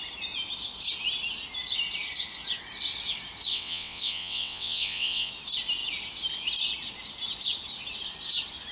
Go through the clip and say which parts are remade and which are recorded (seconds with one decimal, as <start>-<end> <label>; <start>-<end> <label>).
0.0-3.5 recorded; 3.5-5.3 remade; 5.3-8.7 recorded